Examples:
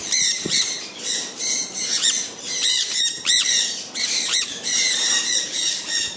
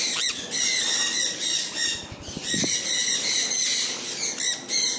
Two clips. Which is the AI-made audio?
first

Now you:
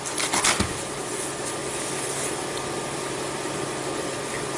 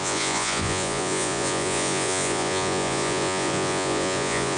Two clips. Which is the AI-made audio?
second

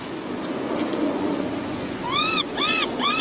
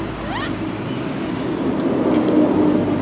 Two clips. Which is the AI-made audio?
first